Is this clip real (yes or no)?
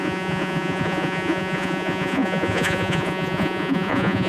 no